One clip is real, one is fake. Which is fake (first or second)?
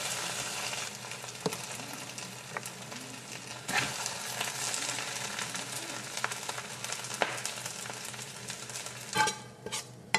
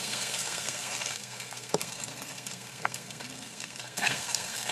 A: second